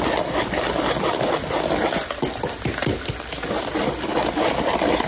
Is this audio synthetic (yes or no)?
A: no